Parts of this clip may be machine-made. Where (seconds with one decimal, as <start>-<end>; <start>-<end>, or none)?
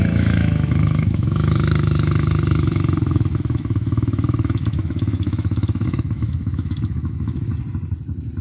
0.0-7.5